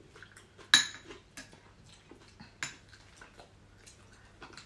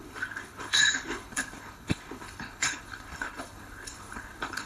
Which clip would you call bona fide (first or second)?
first